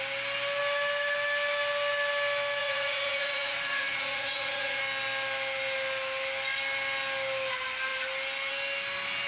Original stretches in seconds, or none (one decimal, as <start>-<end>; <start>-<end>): 0.0-2.6; 4.8-9.3